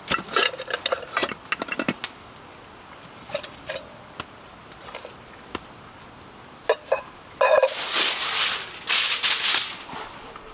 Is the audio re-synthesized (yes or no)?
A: no